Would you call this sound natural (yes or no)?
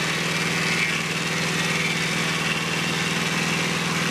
yes